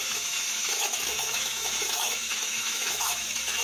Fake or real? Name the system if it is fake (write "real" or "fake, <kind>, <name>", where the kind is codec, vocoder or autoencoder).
fake, autoencoder, DAC-VAE